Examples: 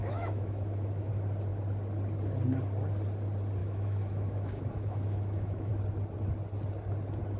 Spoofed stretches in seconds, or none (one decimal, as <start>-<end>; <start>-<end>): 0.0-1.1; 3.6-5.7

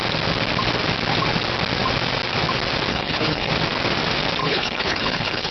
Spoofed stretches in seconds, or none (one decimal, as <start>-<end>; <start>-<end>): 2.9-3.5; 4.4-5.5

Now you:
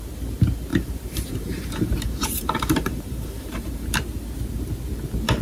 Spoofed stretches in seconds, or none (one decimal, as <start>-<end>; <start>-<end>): 0.7-3.9